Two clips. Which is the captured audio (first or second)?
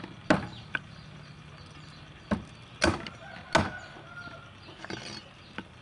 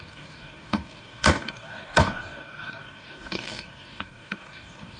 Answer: first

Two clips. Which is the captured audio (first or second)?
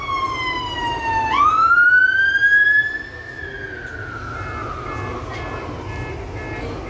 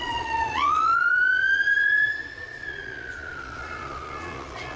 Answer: first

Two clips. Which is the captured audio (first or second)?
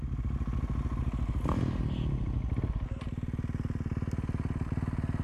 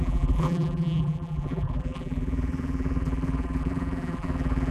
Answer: first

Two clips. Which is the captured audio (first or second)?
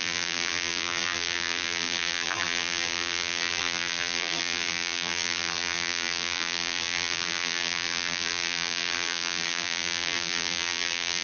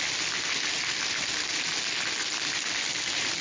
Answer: second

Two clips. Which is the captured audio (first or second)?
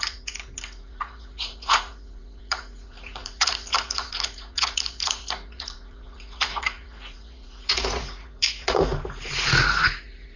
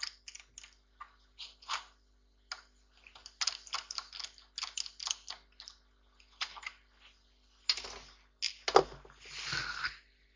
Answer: second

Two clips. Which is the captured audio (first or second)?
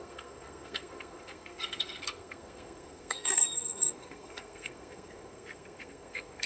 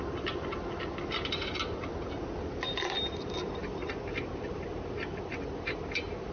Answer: second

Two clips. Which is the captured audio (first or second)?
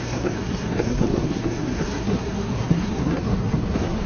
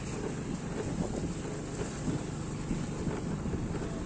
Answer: second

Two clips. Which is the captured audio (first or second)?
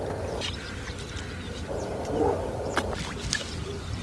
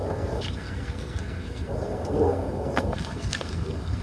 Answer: first